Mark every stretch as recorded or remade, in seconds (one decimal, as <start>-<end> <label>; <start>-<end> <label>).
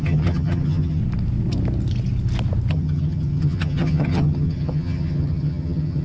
0.0-1.0 remade; 1.0-2.7 recorded; 2.7-6.0 remade